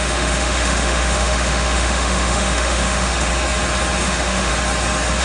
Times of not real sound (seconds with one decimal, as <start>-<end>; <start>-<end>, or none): 0.0-3.3; 4.0-4.5